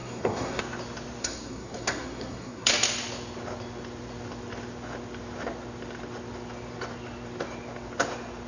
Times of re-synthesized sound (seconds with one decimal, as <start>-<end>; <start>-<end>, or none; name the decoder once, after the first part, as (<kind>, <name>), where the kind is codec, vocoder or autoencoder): 0.0-0.6 (codec, SNAC); 1.2-2.7